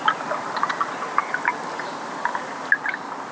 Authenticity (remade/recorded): recorded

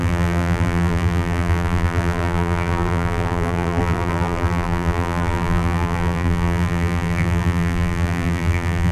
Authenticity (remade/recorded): remade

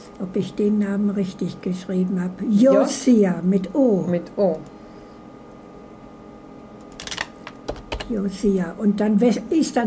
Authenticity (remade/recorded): recorded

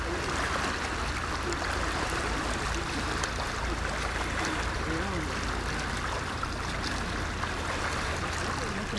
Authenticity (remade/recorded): recorded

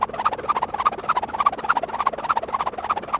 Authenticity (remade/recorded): recorded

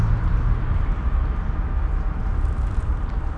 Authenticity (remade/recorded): recorded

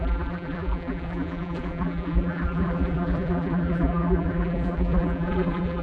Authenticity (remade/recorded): remade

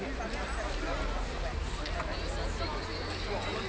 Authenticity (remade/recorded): recorded